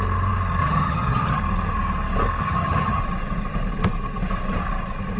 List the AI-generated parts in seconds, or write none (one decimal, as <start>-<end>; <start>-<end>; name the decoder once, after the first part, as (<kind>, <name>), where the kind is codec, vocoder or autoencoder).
0.6-1.4 (vocoder, HiFi-GAN); 2.4-3.0